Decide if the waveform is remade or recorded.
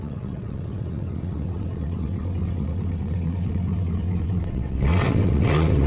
remade